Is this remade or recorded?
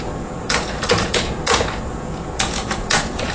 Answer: remade